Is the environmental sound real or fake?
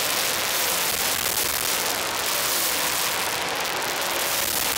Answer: real